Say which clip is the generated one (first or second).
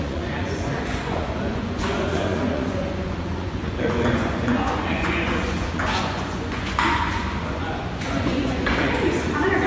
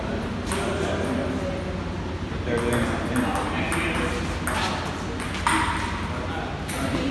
first